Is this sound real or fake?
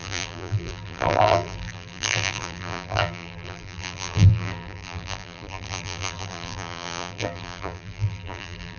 fake